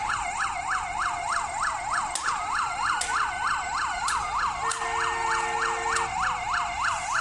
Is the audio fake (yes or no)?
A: no